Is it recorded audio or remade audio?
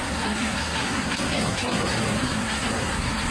remade